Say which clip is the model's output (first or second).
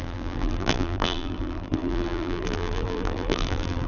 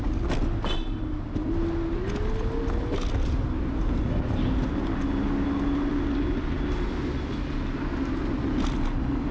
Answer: first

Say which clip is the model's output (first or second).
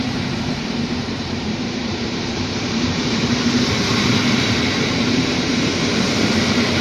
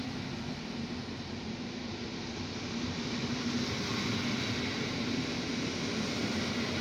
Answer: first